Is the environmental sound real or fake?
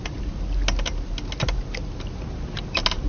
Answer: real